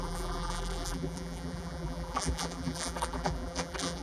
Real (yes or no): no